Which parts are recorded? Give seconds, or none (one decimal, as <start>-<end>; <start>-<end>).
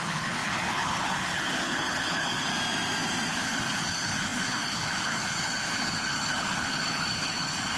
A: 2.5-3.3